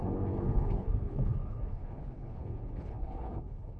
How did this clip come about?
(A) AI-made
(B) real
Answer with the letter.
A